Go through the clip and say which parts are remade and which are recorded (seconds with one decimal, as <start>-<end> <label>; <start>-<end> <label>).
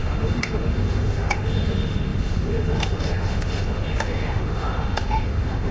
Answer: 0.0-5.7 remade